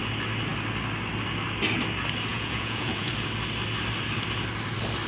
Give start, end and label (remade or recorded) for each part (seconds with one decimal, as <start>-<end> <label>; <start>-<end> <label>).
0.0-2.3 recorded; 2.3-3.1 remade; 3.1-5.1 recorded